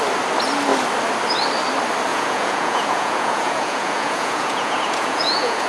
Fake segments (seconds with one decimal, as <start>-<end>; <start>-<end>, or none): 2.1-5.7